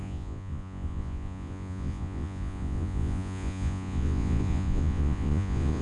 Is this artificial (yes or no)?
yes